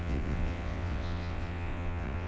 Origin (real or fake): fake